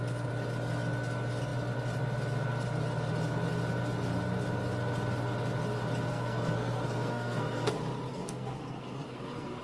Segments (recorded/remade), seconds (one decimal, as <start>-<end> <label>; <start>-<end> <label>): 0.0-6.1 recorded; 6.1-7.7 remade; 7.7-8.1 recorded; 8.1-9.6 remade